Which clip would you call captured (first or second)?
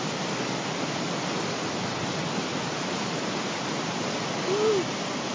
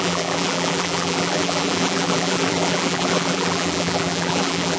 first